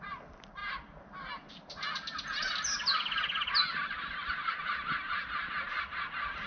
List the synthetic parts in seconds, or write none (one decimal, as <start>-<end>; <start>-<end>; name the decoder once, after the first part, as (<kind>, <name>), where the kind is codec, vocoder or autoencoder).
none